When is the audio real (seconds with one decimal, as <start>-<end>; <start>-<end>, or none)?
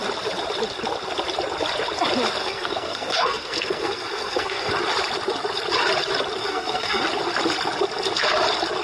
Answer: 0.0-2.4; 4.7-6.4; 7.0-8.8